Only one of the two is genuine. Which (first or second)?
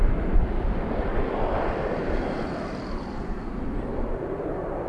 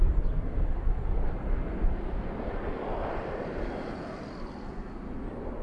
second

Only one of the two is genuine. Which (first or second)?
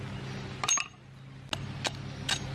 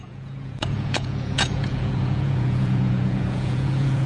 first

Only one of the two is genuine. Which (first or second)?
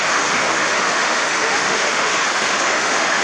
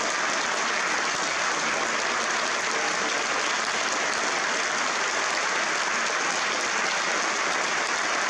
second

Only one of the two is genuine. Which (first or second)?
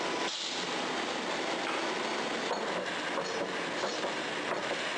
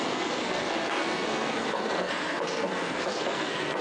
first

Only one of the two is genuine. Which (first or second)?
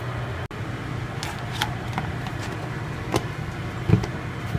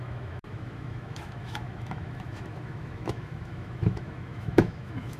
first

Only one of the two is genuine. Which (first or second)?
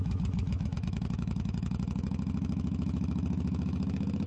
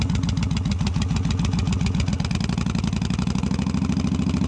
second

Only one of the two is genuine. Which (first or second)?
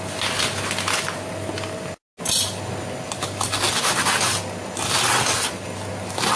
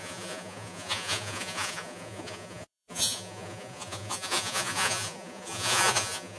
first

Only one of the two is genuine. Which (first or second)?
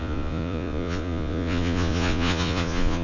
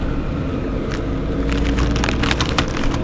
second